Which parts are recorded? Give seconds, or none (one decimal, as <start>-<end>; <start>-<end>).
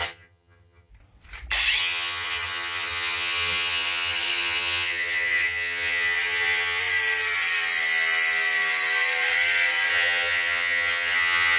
0.9-1.8; 6.8-9.9